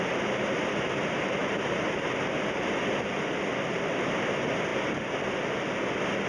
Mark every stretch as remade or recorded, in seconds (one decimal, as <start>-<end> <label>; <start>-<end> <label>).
0.0-6.3 recorded